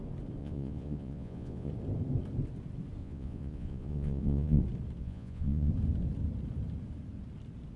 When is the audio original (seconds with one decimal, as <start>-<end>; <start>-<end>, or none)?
0.0-0.4; 1.7-3.0; 4.6-5.0; 5.7-7.8